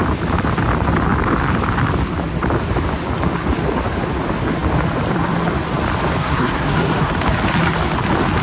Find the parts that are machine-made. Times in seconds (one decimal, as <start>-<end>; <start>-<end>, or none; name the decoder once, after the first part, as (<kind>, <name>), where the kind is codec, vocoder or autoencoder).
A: 6.2-7.1 (codec, SNAC)